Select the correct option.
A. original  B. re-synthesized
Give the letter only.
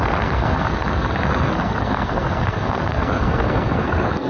B